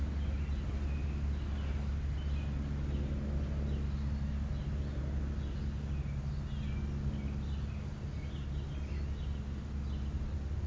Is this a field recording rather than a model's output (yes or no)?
yes